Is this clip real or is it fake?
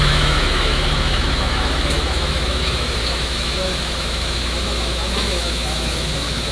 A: fake